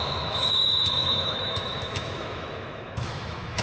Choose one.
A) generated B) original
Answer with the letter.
A